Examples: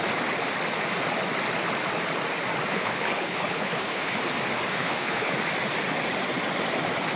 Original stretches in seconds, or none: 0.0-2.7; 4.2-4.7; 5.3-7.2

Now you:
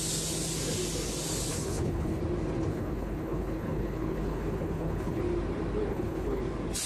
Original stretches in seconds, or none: 0.0-1.5; 2.2-2.7; 5.2-5.9; 6.4-6.9

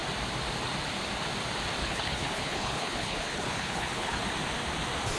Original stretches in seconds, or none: 0.0-1.8; 4.2-5.2